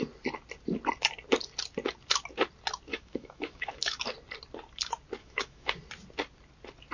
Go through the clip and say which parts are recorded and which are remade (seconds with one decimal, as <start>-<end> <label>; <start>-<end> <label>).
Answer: 0.0-2.9 recorded; 2.9-4.0 remade; 4.0-5.2 recorded; 5.2-5.7 remade; 5.7-6.9 recorded